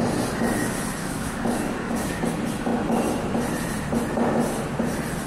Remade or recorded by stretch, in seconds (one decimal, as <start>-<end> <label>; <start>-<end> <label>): 0.0-1.0 recorded; 1.0-2.2 remade; 2.2-5.3 recorded